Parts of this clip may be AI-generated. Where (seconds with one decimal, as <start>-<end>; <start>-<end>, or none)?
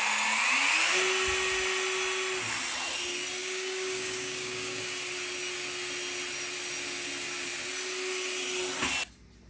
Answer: 3.4-4.8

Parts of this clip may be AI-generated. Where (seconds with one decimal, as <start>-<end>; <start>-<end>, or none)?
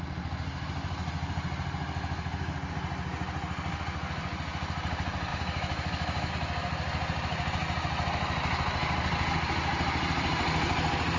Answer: 5.3-6.3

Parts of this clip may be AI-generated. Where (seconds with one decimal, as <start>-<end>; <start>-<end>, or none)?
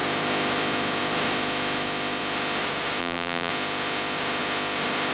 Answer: 3.0-3.5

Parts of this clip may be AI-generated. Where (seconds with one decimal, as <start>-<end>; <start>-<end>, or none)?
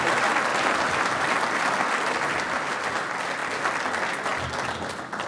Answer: none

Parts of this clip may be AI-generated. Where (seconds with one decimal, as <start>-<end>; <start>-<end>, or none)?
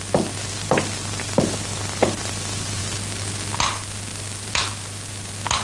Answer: none